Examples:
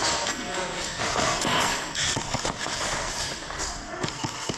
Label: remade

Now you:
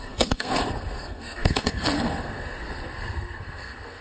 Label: remade